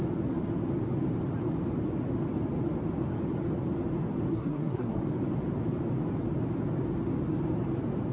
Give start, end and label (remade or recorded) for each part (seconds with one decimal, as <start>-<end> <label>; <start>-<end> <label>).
0.0-4.3 recorded; 4.3-5.0 remade; 5.0-8.1 recorded